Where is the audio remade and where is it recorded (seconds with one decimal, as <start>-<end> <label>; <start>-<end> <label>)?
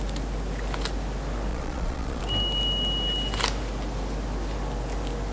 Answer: 0.0-1.5 recorded; 1.5-2.2 remade; 2.2-5.3 recorded